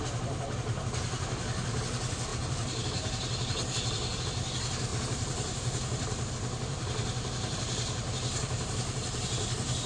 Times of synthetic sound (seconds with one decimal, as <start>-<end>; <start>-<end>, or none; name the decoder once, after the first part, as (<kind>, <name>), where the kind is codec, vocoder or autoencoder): 2.3-4.2 (vocoder, BigVGAN v2); 4.9-6.3; 6.7-9.9